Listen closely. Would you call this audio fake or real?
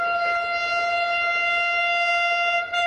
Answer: real